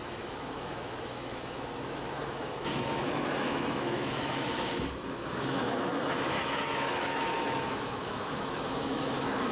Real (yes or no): no